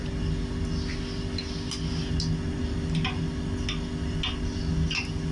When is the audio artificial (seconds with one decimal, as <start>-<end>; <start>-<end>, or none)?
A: none